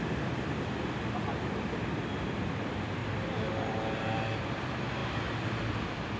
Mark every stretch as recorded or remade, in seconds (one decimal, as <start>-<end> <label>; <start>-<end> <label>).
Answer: 0.0-6.2 remade